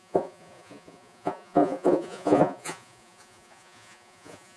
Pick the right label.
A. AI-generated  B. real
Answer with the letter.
A